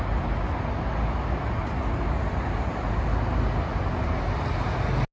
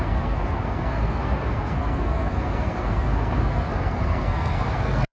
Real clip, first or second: first